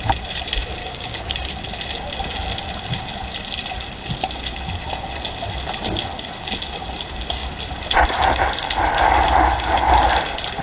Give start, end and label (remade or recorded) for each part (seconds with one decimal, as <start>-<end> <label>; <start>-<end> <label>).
0.0-0.8 recorded; 0.8-1.5 remade; 1.5-10.6 recorded